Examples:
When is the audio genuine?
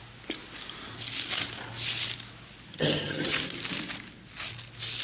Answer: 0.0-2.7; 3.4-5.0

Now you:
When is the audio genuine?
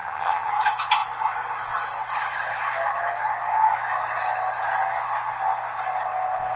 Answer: 0.5-6.6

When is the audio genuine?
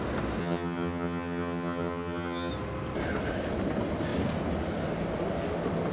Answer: 0.0-0.4; 2.5-5.9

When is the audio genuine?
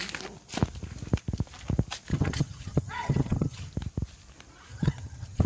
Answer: 0.0-2.1; 3.7-4.7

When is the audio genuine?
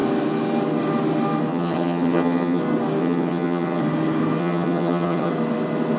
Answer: 0.0-1.5; 2.6-3.0; 3.8-4.4; 5.3-6.0